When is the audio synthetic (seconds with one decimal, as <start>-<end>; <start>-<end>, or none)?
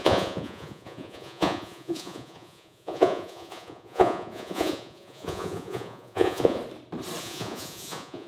0.0-6.6; 7.2-8.3